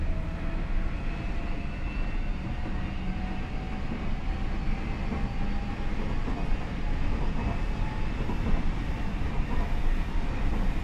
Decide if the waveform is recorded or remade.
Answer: recorded